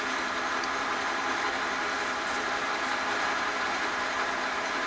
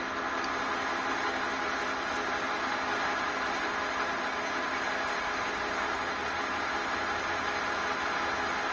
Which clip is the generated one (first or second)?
first